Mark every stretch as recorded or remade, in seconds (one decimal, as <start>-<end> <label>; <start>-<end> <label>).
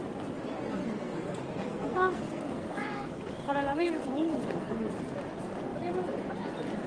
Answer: 0.0-0.8 recorded; 0.8-4.9 remade; 4.9-6.9 recorded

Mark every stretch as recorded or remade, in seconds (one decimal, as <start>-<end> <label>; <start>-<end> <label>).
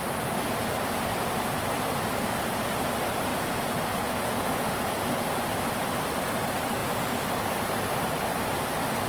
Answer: 0.0-3.3 recorded; 3.3-5.5 remade; 5.5-9.1 recorded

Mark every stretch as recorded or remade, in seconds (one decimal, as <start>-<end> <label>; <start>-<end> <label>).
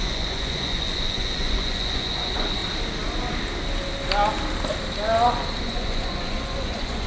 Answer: 0.0-2.6 remade; 2.6-5.6 recorded; 5.6-7.1 remade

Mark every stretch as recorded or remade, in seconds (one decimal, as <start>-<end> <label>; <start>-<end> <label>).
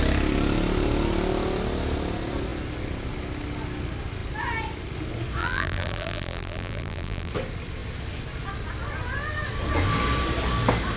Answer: 0.0-5.4 recorded; 5.4-7.3 remade; 7.3-11.0 recorded